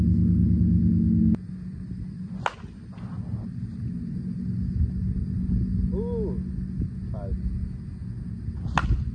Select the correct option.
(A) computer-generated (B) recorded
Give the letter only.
B